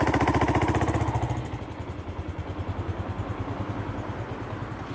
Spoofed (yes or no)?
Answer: no